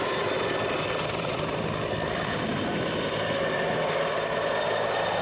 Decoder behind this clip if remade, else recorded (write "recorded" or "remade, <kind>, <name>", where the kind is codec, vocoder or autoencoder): remade, vocoder, BigVGAN v2